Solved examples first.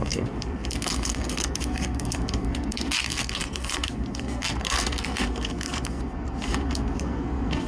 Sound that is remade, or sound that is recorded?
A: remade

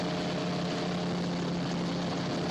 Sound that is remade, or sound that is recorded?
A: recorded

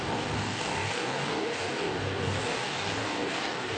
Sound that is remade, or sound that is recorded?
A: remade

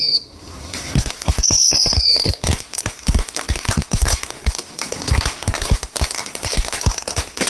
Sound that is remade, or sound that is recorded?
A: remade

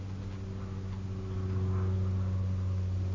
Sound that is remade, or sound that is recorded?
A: recorded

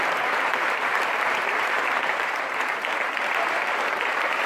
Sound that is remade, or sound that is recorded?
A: remade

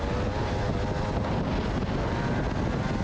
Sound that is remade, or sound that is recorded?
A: recorded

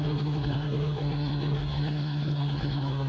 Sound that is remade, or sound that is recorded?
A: remade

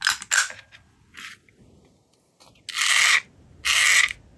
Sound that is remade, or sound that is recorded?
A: recorded